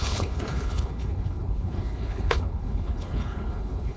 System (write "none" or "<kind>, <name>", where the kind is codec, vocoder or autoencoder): codec, HILCodec